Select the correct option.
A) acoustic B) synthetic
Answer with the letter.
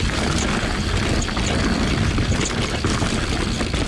A